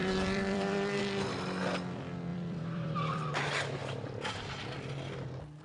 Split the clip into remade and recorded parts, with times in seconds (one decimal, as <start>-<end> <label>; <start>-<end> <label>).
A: 0.0-1.0 remade; 1.0-2.3 recorded; 2.3-3.4 remade; 3.4-5.6 recorded